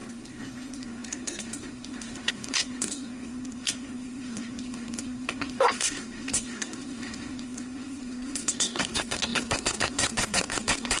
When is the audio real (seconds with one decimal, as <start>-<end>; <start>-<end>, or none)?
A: none